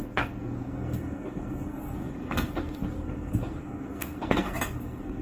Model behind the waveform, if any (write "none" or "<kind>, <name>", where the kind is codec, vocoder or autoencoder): codec, SNAC